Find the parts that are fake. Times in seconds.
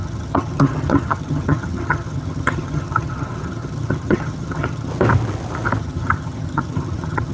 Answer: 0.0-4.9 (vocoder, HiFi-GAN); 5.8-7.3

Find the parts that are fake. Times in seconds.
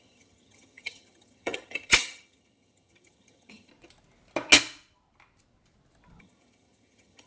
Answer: 0.0-3.7 (vocoder, HiFi-GAN); 6.2-7.3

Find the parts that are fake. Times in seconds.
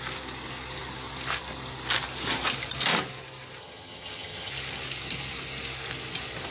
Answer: 3.6-4.5 (vocoder, HiFi-GAN)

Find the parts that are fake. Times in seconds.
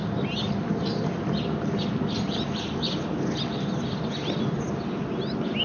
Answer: none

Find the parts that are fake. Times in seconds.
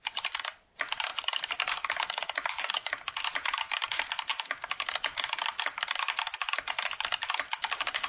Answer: none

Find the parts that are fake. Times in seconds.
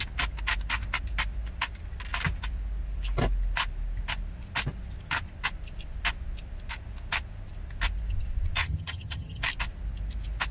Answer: 8.6-9.4 (vocoder, HiFi-GAN)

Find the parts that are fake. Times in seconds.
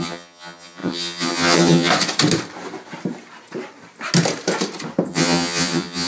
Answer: 0.0-1.9 (vocoder, HiFi-GAN); 5.1-6.1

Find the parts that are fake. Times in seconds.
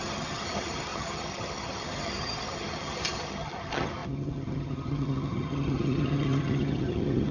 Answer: 0.0-7.3 (vocoder, HiFi-GAN)